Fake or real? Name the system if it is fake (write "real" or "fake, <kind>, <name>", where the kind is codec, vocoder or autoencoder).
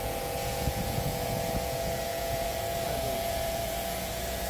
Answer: fake, vocoder, Vocos